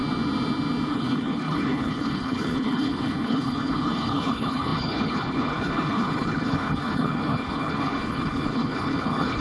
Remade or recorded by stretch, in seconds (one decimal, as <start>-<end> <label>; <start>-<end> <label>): 0.0-0.9 recorded; 0.9-9.4 remade

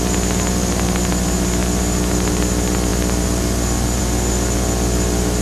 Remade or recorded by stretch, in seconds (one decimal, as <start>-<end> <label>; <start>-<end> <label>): 0.0-5.4 recorded

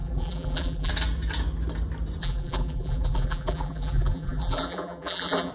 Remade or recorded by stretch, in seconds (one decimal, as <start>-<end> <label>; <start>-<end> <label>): 0.0-0.9 remade; 0.9-2.2 recorded; 2.2-5.5 remade

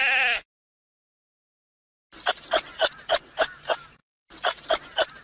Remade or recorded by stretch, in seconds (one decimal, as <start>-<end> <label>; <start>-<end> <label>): 0.0-5.2 recorded

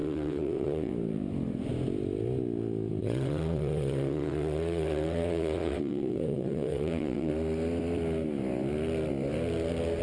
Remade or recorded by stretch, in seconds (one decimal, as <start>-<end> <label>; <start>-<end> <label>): 0.0-0.9 remade; 0.9-3.0 recorded; 3.0-7.3 remade; 7.3-10.0 recorded

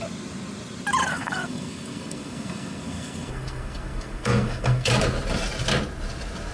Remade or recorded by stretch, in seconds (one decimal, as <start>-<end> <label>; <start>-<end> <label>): 0.0-1.0 recorded; 1.0-4.9 remade; 4.9-6.5 recorded

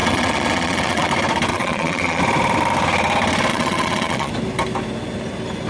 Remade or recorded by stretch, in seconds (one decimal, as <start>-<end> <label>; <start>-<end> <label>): 0.0-1.1 remade; 1.1-1.5 recorded; 1.5-2.2 remade; 2.2-3.5 recorded; 3.5-4.3 remade; 4.3-5.7 recorded

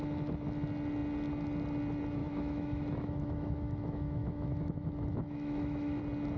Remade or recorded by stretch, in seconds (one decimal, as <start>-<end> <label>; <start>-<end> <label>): 0.0-2.2 recorded; 2.2-6.0 remade; 6.0-6.4 recorded